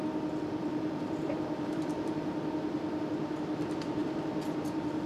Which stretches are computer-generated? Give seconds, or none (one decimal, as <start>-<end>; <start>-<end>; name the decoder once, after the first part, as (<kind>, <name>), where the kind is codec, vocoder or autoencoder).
0.6-2.3 (vocoder, BigVGAN v2); 4.0-5.1